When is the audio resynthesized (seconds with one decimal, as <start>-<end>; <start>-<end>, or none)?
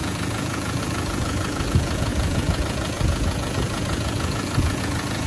0.0-5.3